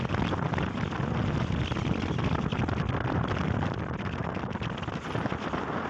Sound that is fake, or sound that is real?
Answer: real